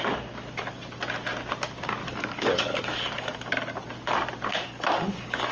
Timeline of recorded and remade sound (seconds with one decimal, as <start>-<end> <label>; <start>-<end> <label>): 0.0-2.0 recorded; 2.0-3.5 remade; 3.5-4.5 recorded; 4.5-5.5 remade